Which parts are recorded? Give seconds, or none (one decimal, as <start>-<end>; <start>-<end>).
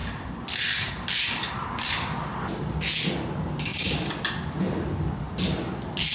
3.1-3.7; 4.3-6.1